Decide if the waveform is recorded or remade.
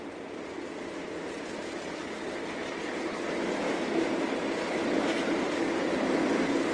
recorded